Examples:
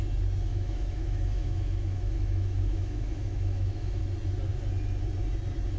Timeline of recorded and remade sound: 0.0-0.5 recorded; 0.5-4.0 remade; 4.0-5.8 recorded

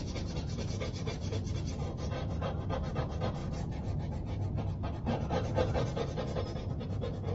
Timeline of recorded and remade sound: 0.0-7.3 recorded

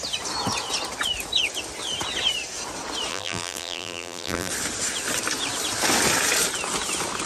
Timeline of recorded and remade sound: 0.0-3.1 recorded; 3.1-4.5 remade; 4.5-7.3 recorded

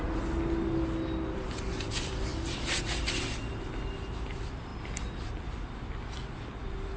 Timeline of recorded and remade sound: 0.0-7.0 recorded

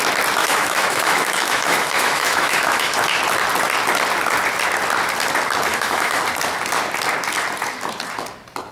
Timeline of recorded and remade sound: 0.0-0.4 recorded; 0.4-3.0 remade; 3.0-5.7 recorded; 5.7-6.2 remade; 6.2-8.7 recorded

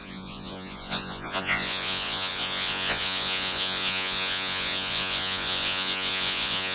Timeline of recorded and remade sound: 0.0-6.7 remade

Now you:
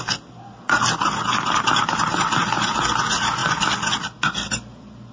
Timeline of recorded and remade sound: 0.0-5.1 recorded

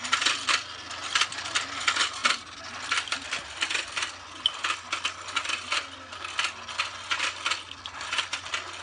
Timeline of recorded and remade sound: 0.0-8.8 recorded